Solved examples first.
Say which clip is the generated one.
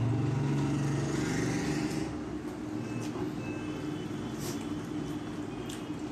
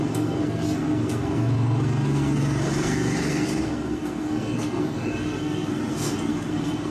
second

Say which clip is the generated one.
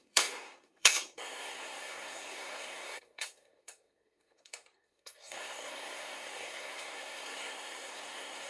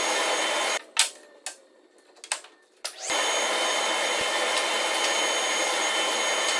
first